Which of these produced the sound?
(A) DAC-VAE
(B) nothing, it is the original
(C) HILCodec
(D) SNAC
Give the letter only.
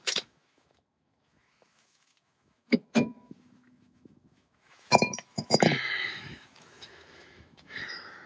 A